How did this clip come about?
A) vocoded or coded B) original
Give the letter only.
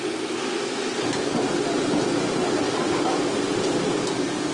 B